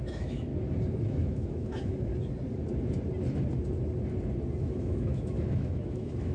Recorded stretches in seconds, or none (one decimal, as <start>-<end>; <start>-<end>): 0.5-1.0; 2.1-4.6